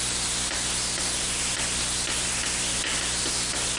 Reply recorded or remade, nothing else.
recorded